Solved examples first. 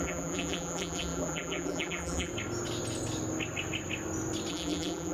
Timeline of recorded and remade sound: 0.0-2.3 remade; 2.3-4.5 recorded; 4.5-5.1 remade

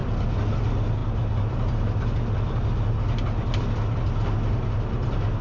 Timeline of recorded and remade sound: 0.0-5.4 recorded

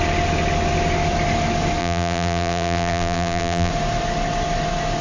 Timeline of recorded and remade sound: 0.0-1.8 recorded; 1.8-3.7 remade; 3.7-5.0 recorded

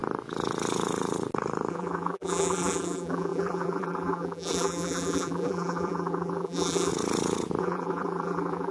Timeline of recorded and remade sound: 0.0-1.7 recorded; 1.7-6.9 remade; 6.9-7.6 recorded; 7.6-8.7 remade